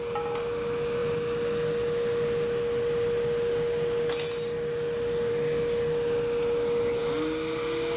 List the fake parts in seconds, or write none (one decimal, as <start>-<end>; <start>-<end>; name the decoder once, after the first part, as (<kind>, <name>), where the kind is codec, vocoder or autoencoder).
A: none